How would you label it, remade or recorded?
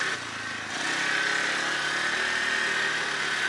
recorded